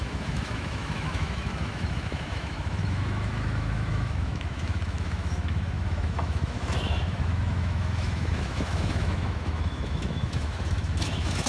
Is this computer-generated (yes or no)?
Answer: yes